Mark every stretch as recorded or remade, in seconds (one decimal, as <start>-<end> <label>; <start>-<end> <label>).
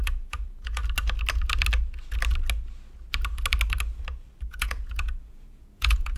0.0-0.8 remade; 0.8-4.5 recorded; 4.5-6.2 remade